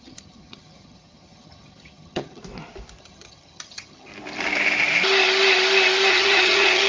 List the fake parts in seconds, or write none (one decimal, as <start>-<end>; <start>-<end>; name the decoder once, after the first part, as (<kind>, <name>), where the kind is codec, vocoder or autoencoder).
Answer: 0.0-2.4 (vocoder, HiFi-GAN); 3.0-4.1; 6.1-6.9